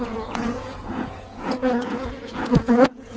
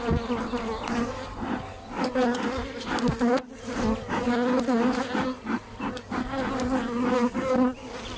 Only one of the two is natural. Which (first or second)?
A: second